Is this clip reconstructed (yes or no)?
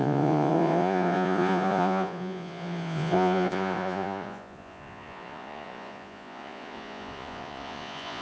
yes